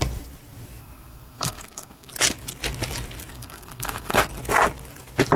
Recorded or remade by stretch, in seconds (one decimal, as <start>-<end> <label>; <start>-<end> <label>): 0.0-0.8 recorded; 0.8-2.1 remade; 2.1-3.3 recorded; 3.3-4.3 remade; 4.3-5.4 recorded